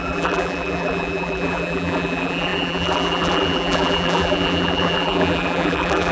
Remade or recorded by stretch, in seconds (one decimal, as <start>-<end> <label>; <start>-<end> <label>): 0.0-6.1 remade